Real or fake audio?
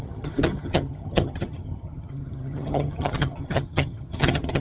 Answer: fake